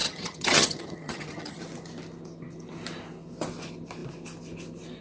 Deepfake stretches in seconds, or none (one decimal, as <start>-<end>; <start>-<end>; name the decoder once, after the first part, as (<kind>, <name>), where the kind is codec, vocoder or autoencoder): 0.0-1.6 (vocoder, HiFi-GAN)

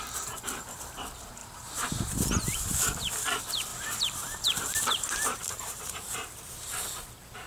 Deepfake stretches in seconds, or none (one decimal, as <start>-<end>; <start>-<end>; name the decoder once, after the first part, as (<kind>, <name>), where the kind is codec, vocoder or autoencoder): 1.4-1.9 (vocoder, BigVGAN v2); 3.7-6.8